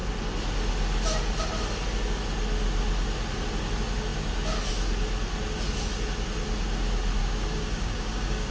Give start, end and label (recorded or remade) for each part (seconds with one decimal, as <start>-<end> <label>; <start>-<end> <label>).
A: 0.0-7.2 recorded; 7.2-8.5 remade